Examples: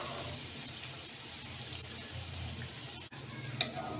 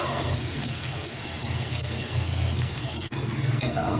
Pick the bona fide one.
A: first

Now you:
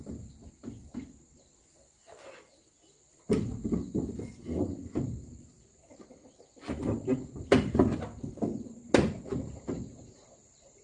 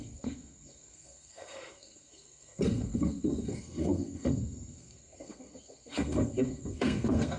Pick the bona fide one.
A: first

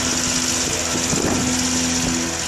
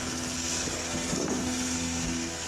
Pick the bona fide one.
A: first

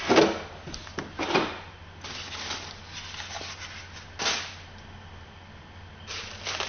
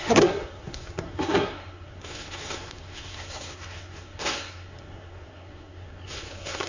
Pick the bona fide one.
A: first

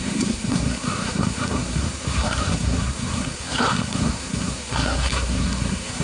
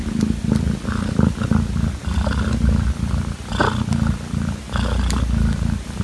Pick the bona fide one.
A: second